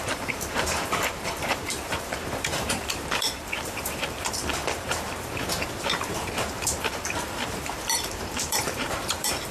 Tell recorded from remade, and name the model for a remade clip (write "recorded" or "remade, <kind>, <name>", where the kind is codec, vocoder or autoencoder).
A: remade, vocoder, BigVGAN v2